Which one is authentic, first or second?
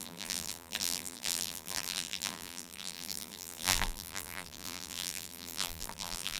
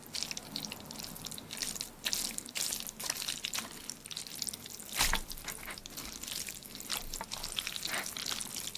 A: second